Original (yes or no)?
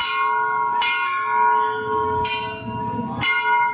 yes